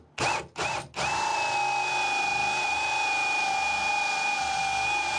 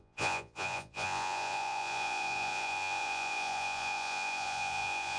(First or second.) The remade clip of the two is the second